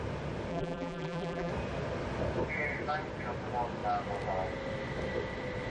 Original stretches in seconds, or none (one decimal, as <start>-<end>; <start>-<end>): 0.0-0.5; 1.5-5.7